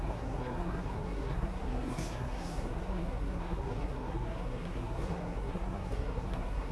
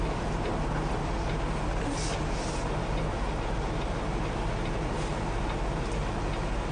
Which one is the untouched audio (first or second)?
second